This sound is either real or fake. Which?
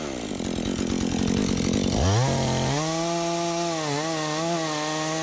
real